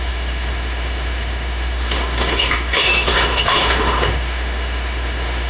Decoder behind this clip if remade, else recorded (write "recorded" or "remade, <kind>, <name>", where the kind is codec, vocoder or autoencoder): remade, autoencoder, DAC-VAE